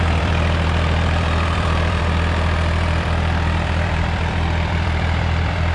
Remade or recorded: remade